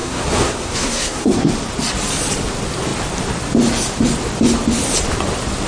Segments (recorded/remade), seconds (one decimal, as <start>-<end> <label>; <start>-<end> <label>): 0.0-1.5 remade; 1.5-5.7 recorded

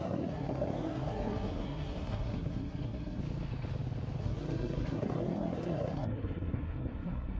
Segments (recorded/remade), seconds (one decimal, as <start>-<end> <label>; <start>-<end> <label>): 0.0-3.2 remade; 3.2-4.2 recorded; 4.2-7.4 remade

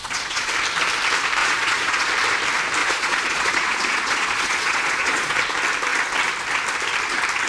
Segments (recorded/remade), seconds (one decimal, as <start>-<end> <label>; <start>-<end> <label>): 0.0-0.5 remade; 0.5-1.4 recorded; 1.4-2.1 remade; 2.1-2.8 recorded; 2.8-5.4 remade; 5.4-7.5 recorded

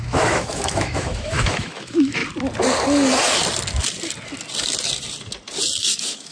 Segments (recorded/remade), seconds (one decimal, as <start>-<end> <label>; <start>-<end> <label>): 0.0-2.2 remade; 2.2-5.8 recorded; 5.8-6.3 remade

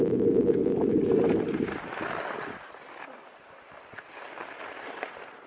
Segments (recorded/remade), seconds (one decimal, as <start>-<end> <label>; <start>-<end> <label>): 0.0-5.5 recorded

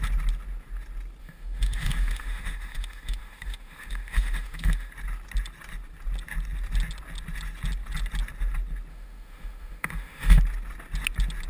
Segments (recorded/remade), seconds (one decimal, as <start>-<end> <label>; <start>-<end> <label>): 0.0-1.2 recorded; 1.2-4.9 remade; 4.9-8.9 recorded; 8.9-10.4 remade; 10.4-11.5 recorded

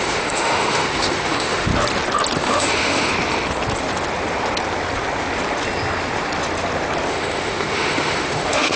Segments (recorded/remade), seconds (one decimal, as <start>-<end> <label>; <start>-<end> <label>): 0.0-1.7 remade; 1.7-2.4 recorded; 2.4-3.1 remade; 3.1-7.1 recorded; 7.1-8.8 remade

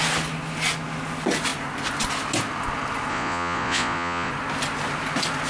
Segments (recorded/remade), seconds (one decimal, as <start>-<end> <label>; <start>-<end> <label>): 0.0-3.1 recorded; 3.1-4.3 remade; 4.3-5.5 recorded